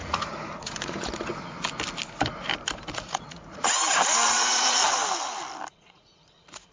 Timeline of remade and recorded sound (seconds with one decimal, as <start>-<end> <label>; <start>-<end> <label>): 0.0-1.3 remade; 1.3-2.9 recorded; 2.9-3.8 remade; 3.8-4.3 recorded; 4.3-4.8 remade; 4.8-5.7 recorded; 5.7-6.7 remade